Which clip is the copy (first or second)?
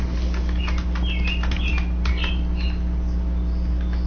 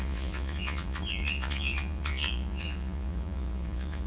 second